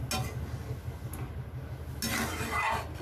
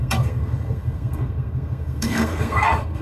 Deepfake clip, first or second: second